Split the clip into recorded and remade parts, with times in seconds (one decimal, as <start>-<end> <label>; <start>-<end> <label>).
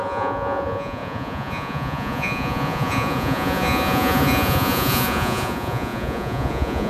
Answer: 0.0-6.9 remade